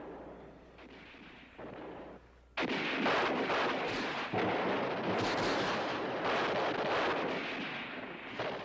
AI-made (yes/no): no